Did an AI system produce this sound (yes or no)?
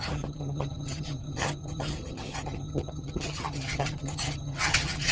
yes